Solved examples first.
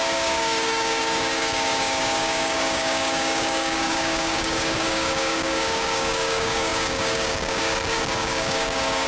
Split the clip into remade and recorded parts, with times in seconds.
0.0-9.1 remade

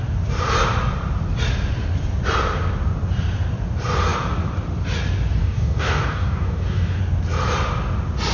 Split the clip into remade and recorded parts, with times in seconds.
0.0-5.4 recorded; 5.4-7.0 remade; 7.0-8.3 recorded

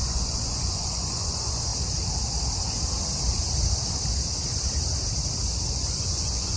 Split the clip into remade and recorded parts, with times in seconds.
0.0-1.7 remade; 1.7-5.7 recorded; 5.7-6.6 remade

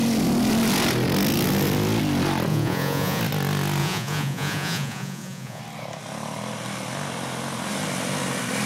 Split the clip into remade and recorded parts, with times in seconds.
0.0-2.5 recorded; 2.5-3.2 remade; 3.2-3.8 recorded; 3.8-5.6 remade; 5.6-8.7 recorded

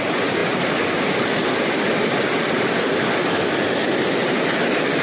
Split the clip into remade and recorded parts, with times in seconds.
0.0-5.0 recorded